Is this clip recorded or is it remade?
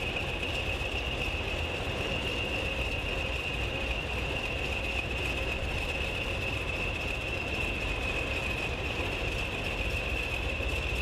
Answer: recorded